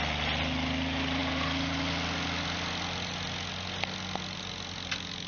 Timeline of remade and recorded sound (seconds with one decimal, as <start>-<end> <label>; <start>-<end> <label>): 0.0-5.3 recorded